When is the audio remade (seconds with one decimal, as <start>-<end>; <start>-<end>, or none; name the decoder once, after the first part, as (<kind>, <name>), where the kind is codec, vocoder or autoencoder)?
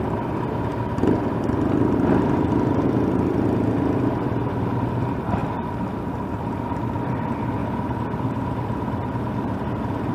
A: 0.0-0.7 (vocoder, BigVGAN v2); 1.5-5.4; 6.3-7.6